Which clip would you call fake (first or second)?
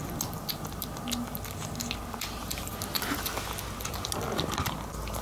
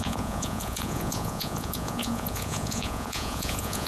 second